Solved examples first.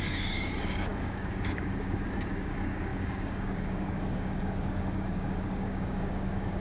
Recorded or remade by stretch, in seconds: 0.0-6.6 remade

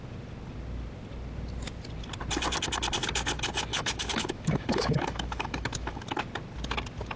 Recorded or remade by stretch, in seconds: 0.0-3.7 recorded; 3.7-6.2 remade; 6.2-7.2 recorded

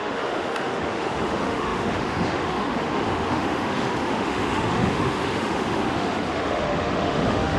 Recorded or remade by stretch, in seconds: 0.0-7.6 remade

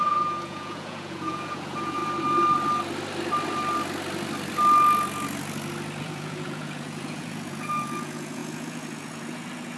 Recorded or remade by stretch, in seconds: 0.0-2.0 remade; 2.0-6.0 recorded; 6.0-9.8 remade

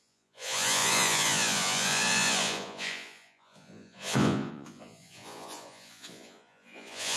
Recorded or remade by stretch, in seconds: 0.0-7.2 remade

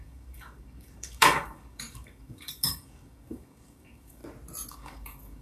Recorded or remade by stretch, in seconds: 0.0-4.2 remade; 4.2-4.7 recorded; 4.7-5.4 remade

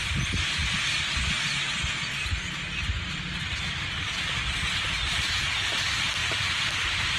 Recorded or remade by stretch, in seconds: 0.0-6.2 recorded; 6.2-6.7 remade; 6.7-7.2 recorded